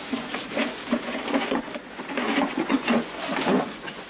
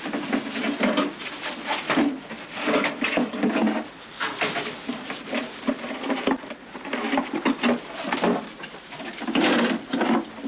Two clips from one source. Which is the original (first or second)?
second